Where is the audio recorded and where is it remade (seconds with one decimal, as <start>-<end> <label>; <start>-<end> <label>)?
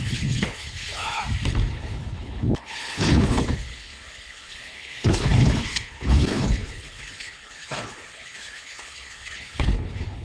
0.0-1.2 remade; 1.2-1.7 recorded; 1.7-10.2 remade